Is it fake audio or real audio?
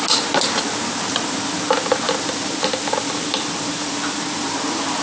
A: real